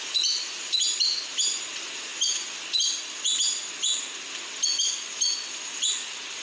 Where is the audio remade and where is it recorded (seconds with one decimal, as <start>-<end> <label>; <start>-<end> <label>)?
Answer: 0.0-6.4 recorded